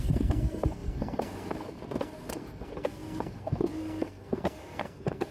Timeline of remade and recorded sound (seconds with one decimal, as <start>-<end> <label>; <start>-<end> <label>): 0.0-5.3 remade